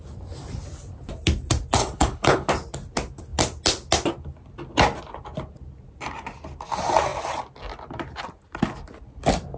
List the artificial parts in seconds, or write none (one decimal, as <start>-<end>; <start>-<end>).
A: 1.8-2.5